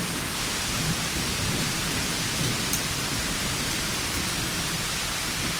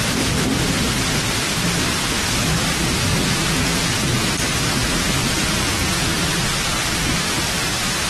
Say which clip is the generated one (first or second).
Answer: first